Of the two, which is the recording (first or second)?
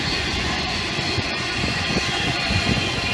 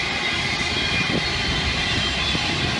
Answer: second